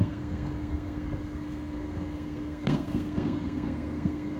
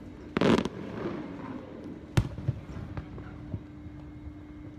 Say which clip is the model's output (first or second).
first